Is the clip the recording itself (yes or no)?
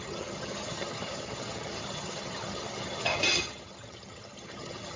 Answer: no